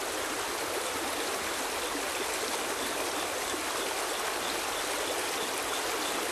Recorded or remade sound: recorded